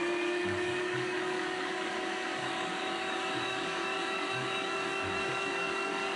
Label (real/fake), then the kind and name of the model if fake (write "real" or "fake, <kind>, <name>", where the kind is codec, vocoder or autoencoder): fake, codec, DAC